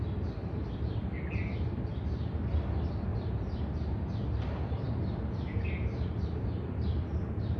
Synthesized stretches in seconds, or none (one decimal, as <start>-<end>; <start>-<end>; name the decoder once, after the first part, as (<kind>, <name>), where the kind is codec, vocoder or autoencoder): 0.4-0.9 (vocoder, BigVGAN v2); 3.1-7.6